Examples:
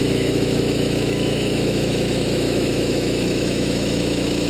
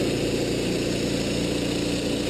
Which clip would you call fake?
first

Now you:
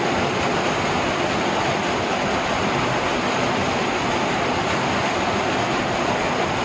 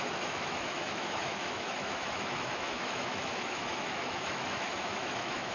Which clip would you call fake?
second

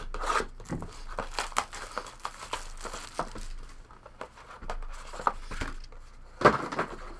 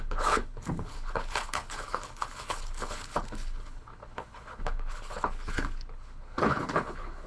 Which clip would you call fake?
second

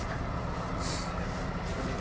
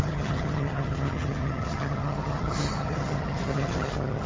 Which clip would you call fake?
second